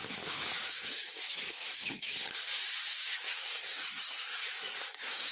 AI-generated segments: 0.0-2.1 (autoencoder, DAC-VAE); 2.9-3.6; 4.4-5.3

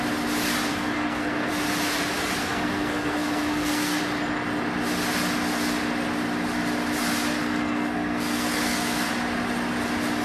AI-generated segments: 0.7-1.5 (codec, SNAC); 2.4-4.0; 7.4-9.1

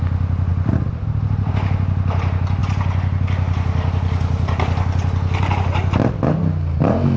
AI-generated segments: 0.5-1.5 (vocoder, BigVGAN v2)

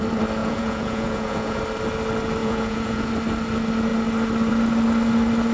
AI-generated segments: 0.4-1.6 (vocoder, Vocos); 2.4-3.1